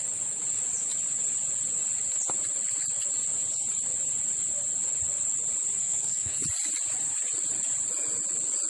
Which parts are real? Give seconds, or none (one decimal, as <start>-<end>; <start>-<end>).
0.0-5.8; 6.4-8.7